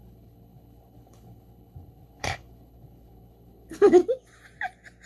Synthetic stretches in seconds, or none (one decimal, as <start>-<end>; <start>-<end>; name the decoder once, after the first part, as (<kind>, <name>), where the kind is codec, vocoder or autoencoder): 0.0-4.0 (codec, HILCodec)